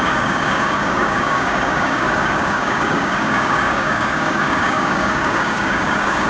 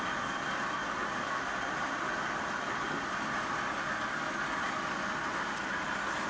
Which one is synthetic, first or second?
first